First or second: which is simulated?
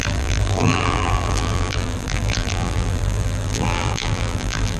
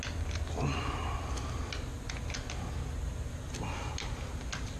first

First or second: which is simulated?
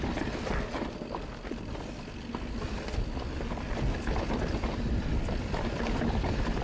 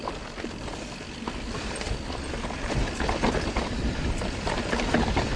second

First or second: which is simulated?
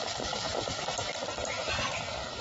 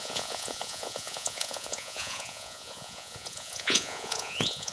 second